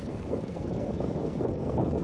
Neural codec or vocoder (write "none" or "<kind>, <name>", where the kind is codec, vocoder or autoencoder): codec, SNAC